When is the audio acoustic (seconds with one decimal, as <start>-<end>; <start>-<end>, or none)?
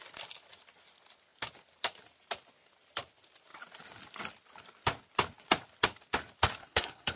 0.0-6.6